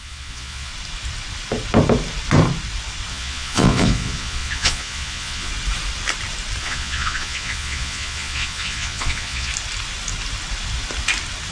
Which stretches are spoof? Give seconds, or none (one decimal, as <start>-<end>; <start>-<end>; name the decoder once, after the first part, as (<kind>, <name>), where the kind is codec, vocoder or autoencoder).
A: 0.0-0.7 (vocoder, Vocos); 3.1-5.5; 6.6-9.5